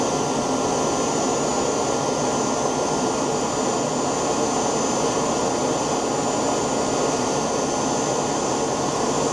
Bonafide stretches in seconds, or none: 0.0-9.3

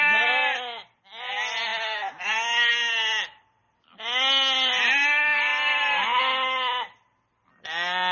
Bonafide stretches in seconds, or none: 0.0-8.1

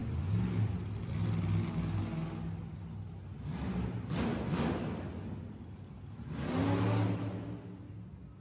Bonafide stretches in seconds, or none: 0.0-8.4

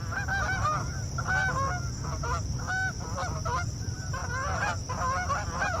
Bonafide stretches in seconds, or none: 0.0-5.8

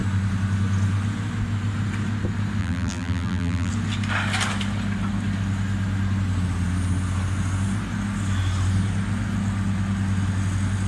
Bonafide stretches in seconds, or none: 0.0-2.6; 3.7-10.9

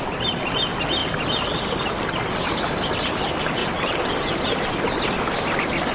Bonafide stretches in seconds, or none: 0.0-1.0; 1.7-3.6; 5.0-5.9

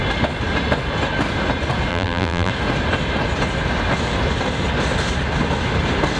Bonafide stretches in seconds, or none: 0.0-1.9; 2.5-6.2

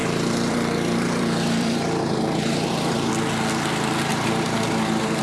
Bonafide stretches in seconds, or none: 3.1-4.1